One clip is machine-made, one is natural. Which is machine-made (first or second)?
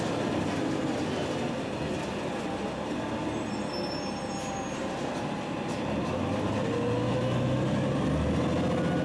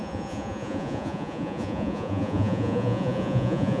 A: second